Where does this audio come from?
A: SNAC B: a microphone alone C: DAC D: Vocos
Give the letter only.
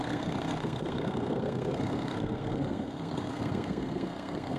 A